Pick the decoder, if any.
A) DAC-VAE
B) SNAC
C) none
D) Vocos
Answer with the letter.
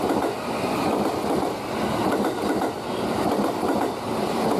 C